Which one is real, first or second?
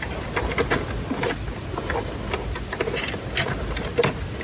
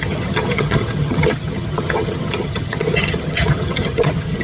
first